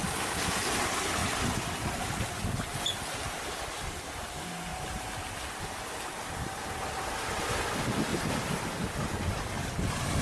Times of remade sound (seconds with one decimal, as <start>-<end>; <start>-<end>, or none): none